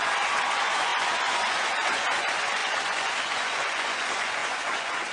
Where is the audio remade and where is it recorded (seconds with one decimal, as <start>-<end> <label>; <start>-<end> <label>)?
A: 0.0-5.1 remade

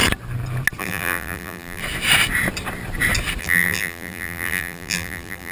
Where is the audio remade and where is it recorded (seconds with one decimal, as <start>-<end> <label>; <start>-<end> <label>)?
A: 0.0-0.8 recorded; 0.8-1.8 remade; 1.8-3.4 recorded; 3.4-5.5 remade

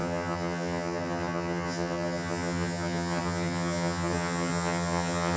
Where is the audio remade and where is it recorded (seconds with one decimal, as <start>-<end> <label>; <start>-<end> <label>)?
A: 0.0-5.4 remade

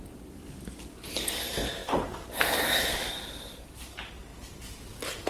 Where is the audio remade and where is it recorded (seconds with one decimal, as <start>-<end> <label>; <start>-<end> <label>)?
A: 0.0-5.3 recorded

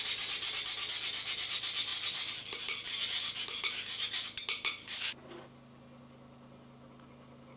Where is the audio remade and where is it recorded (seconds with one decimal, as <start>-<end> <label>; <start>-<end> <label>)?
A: 0.0-7.6 recorded

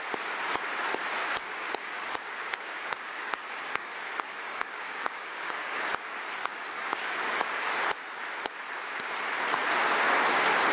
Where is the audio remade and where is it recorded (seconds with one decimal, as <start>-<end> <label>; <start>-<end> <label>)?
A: 0.0-1.2 recorded; 1.2-5.8 remade; 5.8-6.4 recorded; 6.4-7.7 remade; 7.7-10.7 recorded

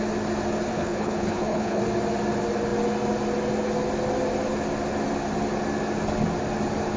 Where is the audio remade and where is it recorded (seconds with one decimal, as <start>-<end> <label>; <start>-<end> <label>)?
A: 0.0-0.7 recorded; 0.7-1.8 remade; 1.8-7.0 recorded

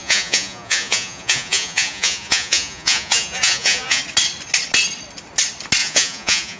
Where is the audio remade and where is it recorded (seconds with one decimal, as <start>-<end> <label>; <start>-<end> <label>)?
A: 0.0-4.0 remade; 4.0-5.8 recorded; 5.8-6.6 remade